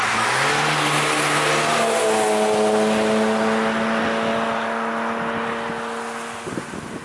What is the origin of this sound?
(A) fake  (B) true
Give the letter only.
B